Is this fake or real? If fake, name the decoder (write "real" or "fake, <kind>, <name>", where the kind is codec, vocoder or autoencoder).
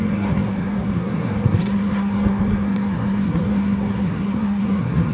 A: fake, codec, SNAC